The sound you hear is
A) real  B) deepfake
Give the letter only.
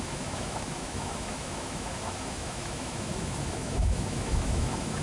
B